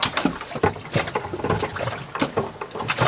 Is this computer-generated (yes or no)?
no